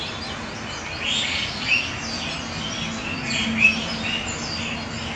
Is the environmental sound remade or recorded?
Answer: recorded